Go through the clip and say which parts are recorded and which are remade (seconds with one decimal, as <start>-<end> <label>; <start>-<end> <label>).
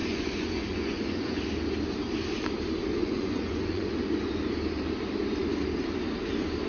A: 0.0-1.4 remade; 1.4-2.9 recorded; 2.9-3.9 remade; 3.9-6.7 recorded